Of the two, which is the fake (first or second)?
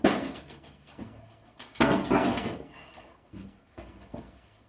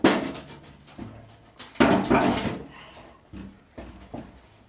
first